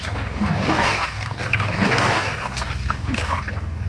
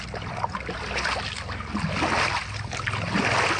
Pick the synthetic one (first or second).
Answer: first